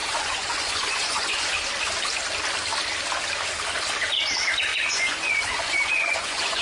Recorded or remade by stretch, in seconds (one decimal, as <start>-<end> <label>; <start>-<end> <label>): 0.0-1.5 remade; 1.5-4.7 recorded; 4.7-6.6 remade